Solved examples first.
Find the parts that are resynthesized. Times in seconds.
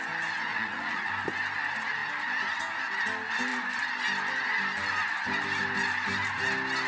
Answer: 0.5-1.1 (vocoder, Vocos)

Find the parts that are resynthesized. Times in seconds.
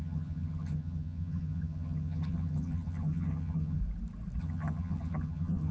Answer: 0.0-3.8 (vocoder, HiFi-GAN); 4.4-5.7